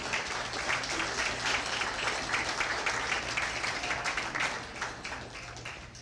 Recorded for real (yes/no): yes